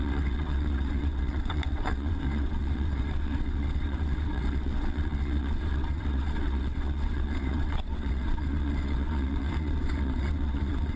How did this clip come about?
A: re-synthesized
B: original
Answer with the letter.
A